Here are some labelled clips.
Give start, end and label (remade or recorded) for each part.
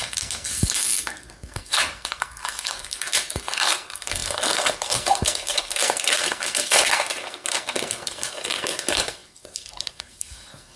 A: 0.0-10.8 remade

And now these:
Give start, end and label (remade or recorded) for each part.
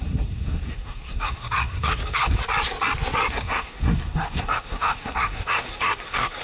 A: 0.0-2.4 remade; 2.4-3.3 recorded; 3.3-6.4 remade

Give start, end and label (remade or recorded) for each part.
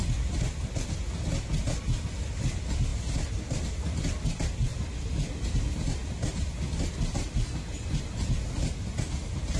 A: 0.0-9.6 recorded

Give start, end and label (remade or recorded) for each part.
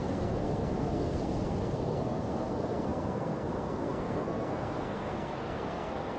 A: 0.0-6.2 remade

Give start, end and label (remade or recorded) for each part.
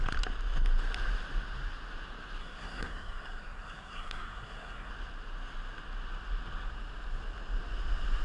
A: 0.0-2.4 recorded; 2.4-4.9 remade; 4.9-8.2 recorded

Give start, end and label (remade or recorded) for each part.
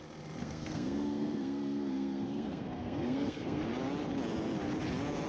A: 0.0-0.4 recorded; 0.4-3.6 remade; 3.6-5.3 recorded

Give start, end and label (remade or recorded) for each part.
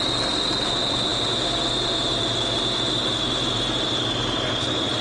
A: 0.0-5.0 recorded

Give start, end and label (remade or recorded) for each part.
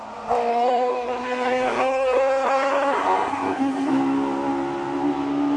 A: 0.0-0.5 recorded; 0.5-3.9 remade; 3.9-5.6 recorded